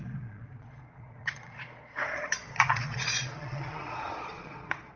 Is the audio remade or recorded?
remade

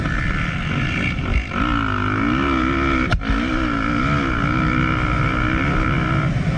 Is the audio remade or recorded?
recorded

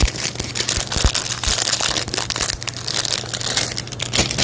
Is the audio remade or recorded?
recorded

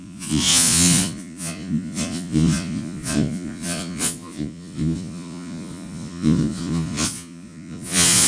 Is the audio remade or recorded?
remade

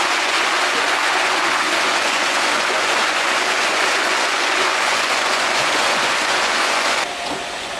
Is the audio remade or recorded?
remade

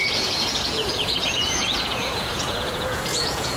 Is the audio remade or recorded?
remade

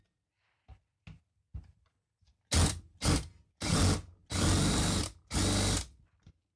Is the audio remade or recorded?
recorded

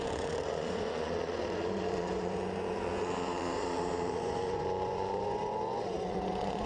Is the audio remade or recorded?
remade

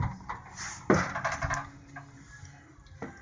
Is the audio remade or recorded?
recorded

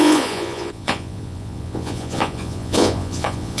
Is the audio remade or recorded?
remade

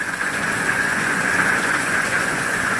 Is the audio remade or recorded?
remade